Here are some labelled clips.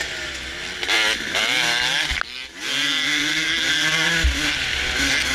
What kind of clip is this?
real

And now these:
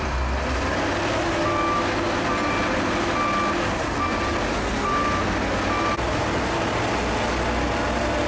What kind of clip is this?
real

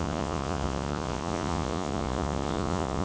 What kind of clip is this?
fake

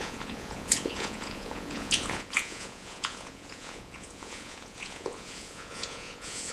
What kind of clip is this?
fake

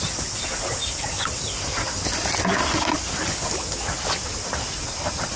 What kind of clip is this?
real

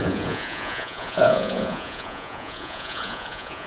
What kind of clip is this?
fake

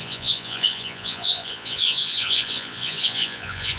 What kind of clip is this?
fake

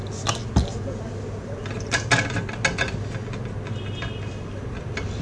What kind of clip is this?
real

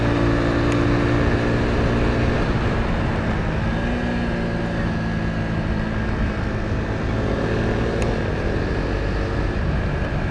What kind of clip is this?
real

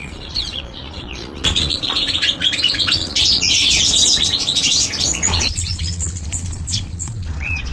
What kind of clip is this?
fake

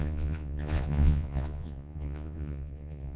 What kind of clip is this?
fake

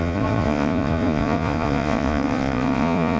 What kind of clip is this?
fake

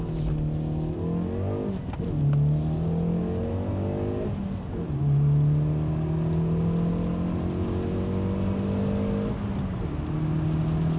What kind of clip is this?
real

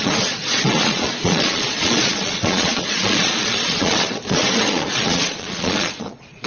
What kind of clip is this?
fake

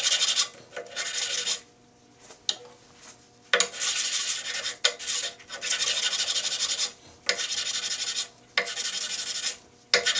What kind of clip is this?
real